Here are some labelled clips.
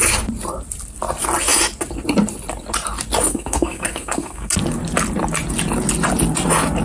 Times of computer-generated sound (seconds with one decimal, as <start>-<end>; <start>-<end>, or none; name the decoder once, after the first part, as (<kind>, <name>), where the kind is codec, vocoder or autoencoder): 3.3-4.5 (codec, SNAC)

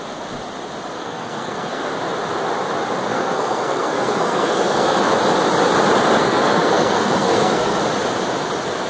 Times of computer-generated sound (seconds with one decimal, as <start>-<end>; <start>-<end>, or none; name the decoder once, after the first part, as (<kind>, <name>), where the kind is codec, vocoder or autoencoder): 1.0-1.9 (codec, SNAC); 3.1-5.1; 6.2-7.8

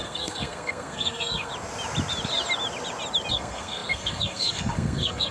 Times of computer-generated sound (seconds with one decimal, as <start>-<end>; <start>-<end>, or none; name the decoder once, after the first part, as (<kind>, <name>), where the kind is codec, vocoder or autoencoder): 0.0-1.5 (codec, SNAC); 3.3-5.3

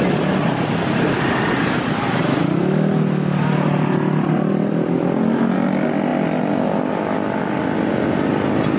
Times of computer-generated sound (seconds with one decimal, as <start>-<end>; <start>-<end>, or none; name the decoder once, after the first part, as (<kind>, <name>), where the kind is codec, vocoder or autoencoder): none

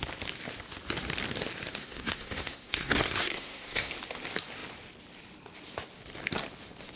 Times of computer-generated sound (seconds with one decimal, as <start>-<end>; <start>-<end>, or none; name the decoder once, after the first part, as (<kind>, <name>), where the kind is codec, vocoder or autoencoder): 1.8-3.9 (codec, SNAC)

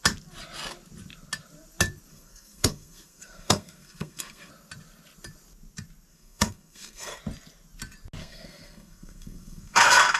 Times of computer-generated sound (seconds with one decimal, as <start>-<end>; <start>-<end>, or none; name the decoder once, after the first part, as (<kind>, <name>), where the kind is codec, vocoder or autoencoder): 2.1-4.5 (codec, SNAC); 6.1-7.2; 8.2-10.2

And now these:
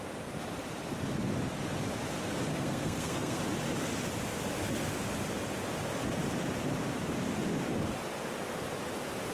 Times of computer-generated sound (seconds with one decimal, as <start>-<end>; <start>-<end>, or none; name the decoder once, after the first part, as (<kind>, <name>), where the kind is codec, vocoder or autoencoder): 2.5-3.4 (codec, SNAC)